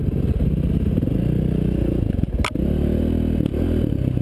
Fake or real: real